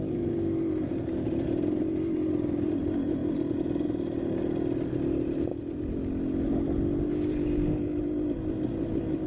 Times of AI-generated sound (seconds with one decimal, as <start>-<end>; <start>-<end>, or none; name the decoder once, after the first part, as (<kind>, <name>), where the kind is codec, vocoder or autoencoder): none